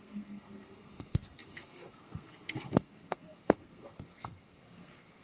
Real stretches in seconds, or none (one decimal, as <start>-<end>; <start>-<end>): none